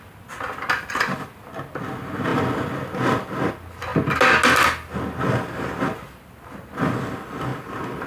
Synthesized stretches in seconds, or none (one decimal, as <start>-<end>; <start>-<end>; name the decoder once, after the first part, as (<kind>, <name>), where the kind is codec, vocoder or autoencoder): none